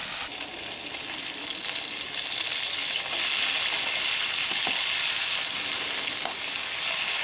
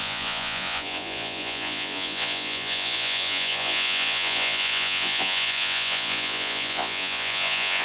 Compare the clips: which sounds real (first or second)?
first